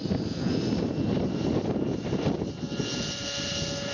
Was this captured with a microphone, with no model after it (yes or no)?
yes